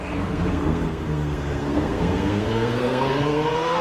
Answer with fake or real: fake